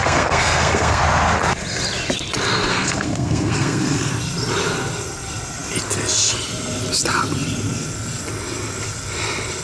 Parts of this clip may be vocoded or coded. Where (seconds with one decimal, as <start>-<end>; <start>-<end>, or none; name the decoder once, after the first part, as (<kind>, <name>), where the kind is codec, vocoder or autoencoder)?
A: 0.0-1.0 (codec, SNAC); 2.7-4.1